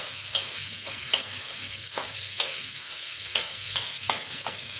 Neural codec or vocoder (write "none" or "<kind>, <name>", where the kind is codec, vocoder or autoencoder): codec, SNAC